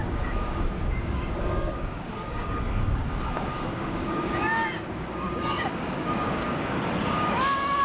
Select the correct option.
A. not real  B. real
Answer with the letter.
A